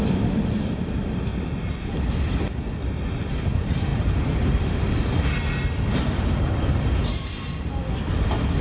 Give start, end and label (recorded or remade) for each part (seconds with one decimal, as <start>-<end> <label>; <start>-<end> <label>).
0.0-8.6 recorded